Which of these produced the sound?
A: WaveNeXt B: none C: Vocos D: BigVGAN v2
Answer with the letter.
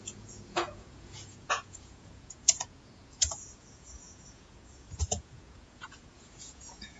C